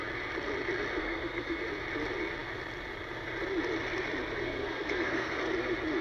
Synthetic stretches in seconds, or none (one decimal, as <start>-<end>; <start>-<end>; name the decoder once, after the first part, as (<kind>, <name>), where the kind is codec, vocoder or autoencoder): 1.0-1.6 (codec, SNAC); 4.4-5.4